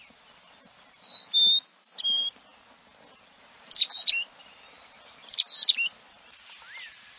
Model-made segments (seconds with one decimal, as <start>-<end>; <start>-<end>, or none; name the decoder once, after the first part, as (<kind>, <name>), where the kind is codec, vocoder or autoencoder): none